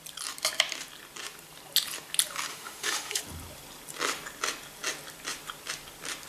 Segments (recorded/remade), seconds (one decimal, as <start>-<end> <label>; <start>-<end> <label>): 0.0-2.5 recorded; 2.5-3.2 remade; 3.2-6.3 recorded